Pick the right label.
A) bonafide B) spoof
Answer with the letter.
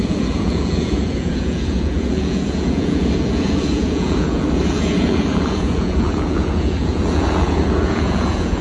B